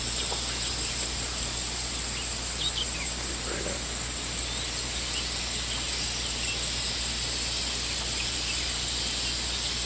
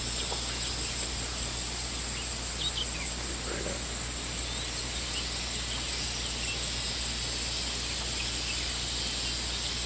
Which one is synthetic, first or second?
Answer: first